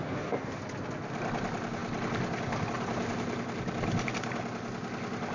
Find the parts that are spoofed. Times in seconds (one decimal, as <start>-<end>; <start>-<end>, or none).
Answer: 0.0-0.6